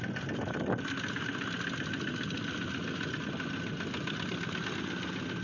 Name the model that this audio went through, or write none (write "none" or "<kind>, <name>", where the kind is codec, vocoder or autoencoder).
none